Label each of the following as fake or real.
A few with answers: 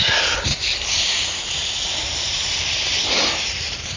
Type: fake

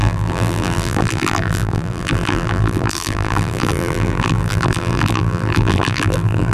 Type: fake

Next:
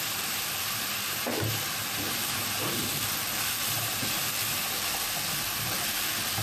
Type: fake